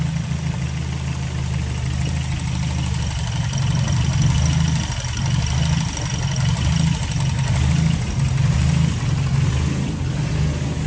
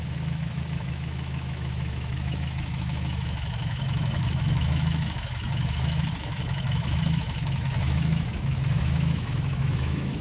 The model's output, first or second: second